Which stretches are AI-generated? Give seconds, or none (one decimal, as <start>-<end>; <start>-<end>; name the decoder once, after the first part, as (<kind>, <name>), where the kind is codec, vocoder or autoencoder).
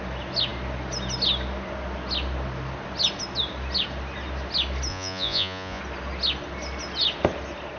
4.9-5.8 (vocoder, Vocos)